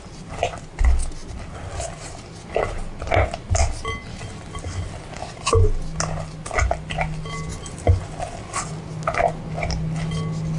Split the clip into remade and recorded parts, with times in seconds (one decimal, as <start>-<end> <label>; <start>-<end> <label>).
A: 0.0-10.6 recorded